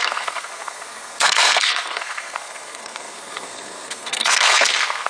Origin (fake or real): fake